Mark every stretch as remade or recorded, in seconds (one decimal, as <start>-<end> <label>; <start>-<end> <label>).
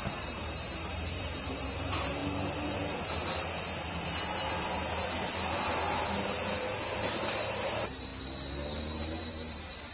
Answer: 0.0-2.2 remade; 2.2-7.3 recorded; 7.3-8.1 remade; 8.1-8.9 recorded; 8.9-9.9 remade